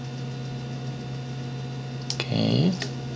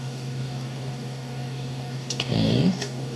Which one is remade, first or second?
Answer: second